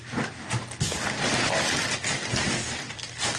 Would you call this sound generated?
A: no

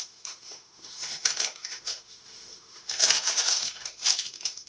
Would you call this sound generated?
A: yes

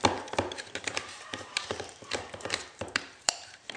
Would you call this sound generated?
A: yes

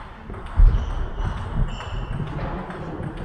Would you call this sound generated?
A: no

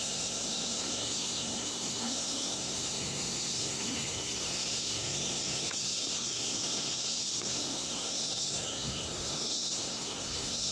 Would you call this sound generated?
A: yes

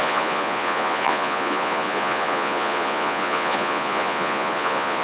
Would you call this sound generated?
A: yes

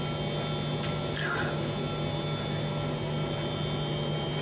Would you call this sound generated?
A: no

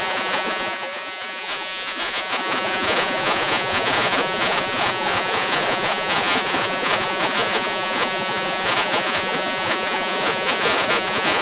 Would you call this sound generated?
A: yes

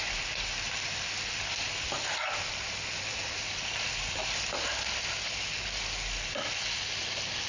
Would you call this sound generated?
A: no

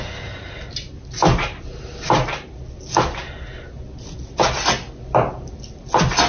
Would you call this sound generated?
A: no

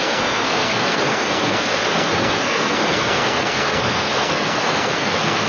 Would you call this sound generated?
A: yes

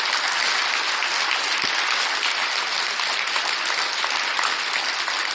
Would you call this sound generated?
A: no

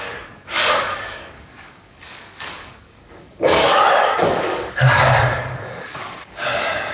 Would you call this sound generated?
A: yes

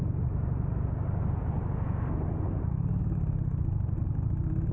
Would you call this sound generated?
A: yes